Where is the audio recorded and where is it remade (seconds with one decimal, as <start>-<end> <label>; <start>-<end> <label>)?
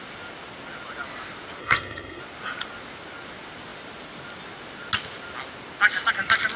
0.0-1.6 recorded; 1.6-2.2 remade; 2.2-6.6 recorded